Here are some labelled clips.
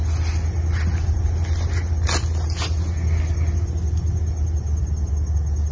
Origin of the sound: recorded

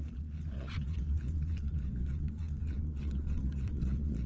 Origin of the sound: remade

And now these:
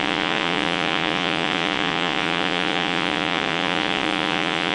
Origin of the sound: remade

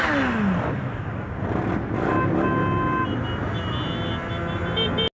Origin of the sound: recorded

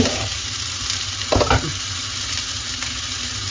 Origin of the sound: recorded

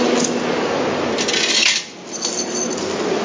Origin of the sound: recorded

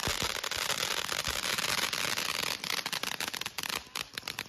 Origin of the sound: recorded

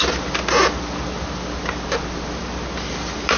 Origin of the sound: recorded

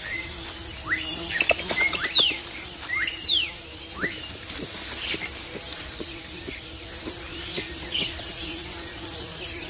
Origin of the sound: recorded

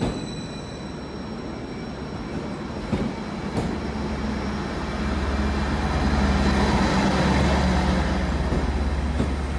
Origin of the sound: recorded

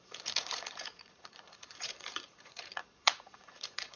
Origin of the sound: remade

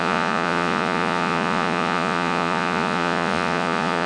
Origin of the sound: remade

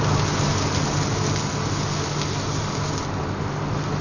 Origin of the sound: recorded